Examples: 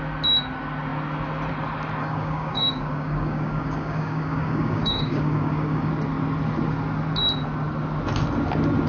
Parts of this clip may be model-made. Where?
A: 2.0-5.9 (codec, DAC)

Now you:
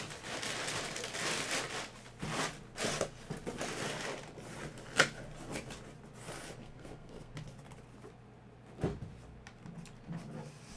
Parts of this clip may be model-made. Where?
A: 6.6-7.3 (codec, SNAC)

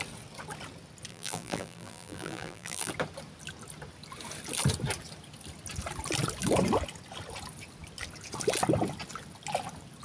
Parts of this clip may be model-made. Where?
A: 1.1-2.9 (vocoder, BigVGAN v2)